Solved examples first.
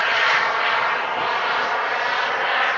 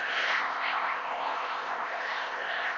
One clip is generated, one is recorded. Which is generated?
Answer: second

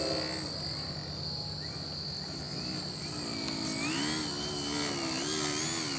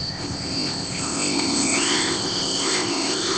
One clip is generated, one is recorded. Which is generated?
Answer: second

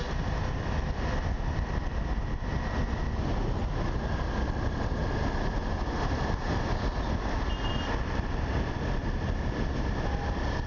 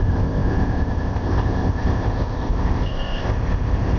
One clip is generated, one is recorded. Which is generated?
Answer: second